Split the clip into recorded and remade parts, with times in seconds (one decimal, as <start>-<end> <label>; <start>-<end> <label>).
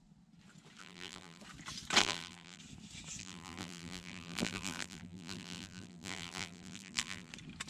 0.0-0.8 recorded; 0.8-1.4 remade; 1.4-2.0 recorded; 2.0-2.6 remade; 2.6-3.2 recorded; 3.2-7.3 remade; 7.3-7.7 recorded